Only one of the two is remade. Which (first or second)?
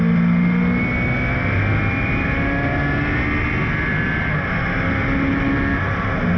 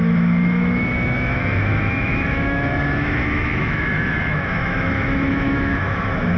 second